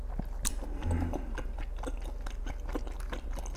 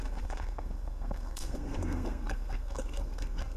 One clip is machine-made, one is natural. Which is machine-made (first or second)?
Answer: second